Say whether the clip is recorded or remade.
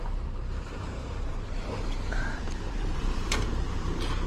remade